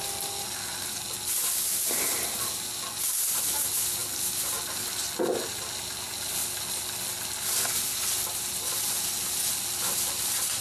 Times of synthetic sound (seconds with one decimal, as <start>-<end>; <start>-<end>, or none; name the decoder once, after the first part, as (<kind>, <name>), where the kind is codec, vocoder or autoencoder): none